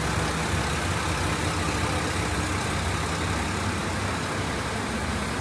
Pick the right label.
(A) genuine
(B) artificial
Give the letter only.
A